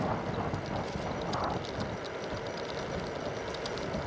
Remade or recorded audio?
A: recorded